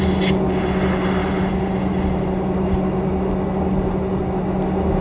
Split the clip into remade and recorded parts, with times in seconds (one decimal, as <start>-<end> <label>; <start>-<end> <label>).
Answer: 0.0-5.0 recorded